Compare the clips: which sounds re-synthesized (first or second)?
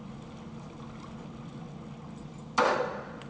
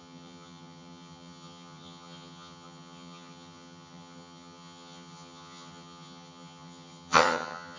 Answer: second